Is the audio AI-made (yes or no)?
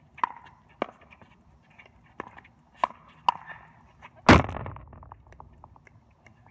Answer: no